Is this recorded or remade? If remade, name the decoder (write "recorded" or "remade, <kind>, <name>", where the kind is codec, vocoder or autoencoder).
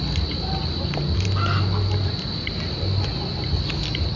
recorded